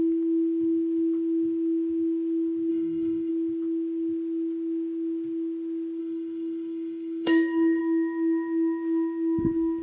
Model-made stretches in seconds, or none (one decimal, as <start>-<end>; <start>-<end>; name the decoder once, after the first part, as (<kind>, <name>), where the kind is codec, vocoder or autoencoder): 2.7-3.3 (codec, SNAC); 6.0-7.8